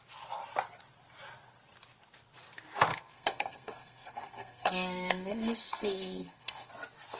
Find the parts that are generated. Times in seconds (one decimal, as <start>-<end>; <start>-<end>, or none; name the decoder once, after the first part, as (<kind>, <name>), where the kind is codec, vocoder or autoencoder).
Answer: 2.9-6.7 (codec, SNAC)